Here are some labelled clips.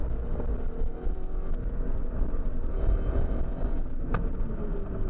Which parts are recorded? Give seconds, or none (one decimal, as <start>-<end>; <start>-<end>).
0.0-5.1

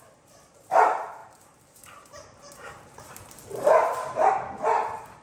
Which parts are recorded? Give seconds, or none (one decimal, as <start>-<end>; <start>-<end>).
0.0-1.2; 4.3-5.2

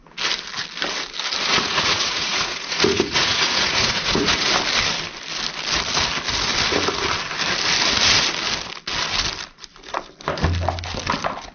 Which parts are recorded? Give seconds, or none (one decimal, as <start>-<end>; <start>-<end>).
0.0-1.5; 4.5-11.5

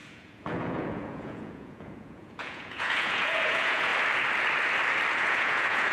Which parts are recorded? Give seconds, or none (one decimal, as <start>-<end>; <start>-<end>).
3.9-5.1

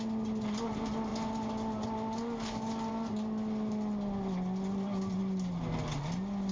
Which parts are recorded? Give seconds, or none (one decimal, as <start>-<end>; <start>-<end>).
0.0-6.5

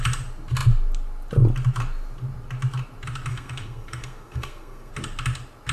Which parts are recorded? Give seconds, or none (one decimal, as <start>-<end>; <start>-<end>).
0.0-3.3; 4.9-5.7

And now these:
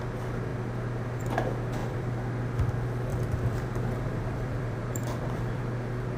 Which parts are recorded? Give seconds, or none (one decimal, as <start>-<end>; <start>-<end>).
0.0-1.8; 2.3-3.1; 5.6-6.2

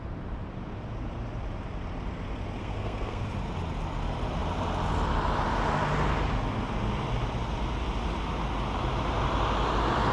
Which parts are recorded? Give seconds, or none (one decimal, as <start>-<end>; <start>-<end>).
0.0-2.6; 3.2-10.1